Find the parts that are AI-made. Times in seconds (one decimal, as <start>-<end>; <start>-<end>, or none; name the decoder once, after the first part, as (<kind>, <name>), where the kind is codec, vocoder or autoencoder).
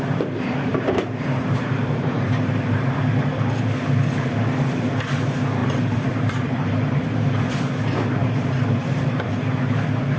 0.7-3.0 (vocoder, BigVGAN v2); 5.6-6.9; 8.2-9.3